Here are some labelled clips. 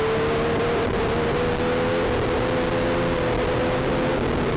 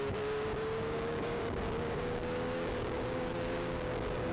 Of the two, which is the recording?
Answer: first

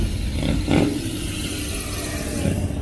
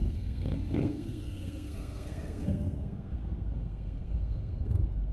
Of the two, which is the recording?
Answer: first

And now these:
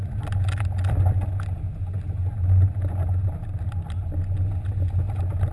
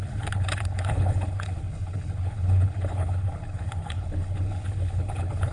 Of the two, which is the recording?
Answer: first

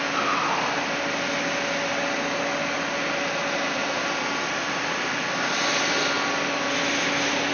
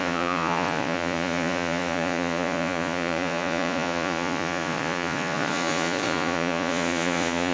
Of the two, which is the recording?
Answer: first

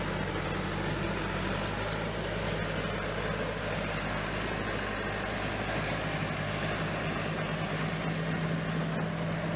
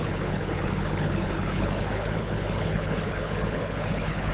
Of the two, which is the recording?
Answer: first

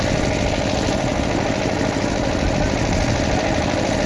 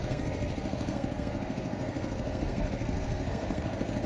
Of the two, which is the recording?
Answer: first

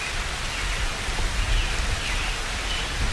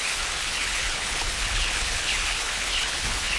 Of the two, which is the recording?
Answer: first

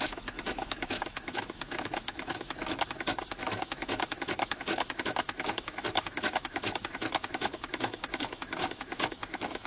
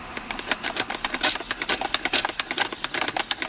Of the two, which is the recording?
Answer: second